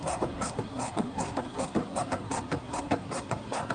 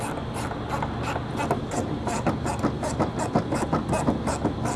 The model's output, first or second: first